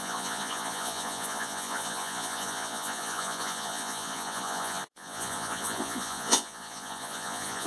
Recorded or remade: remade